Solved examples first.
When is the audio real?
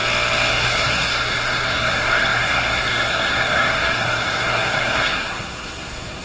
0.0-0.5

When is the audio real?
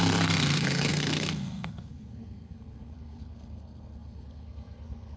none